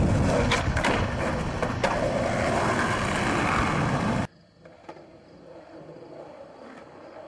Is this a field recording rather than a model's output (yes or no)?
yes